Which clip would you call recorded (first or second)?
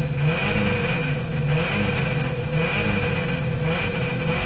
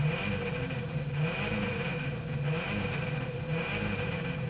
first